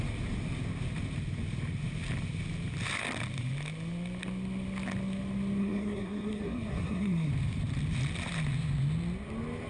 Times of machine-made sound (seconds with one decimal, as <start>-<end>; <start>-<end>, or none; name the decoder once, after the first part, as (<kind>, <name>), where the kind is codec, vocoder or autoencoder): 5.6-7.3 (codec, SNAC)